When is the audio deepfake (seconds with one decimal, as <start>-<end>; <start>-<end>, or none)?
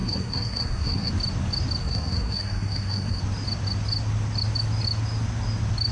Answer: 0.0-1.1; 1.8-3.2